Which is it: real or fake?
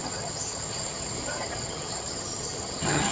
fake